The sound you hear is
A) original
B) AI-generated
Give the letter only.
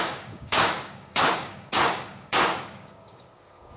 B